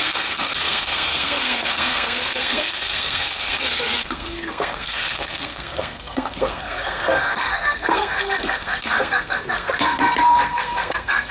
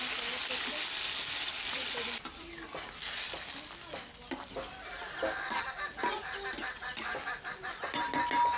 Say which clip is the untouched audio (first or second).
second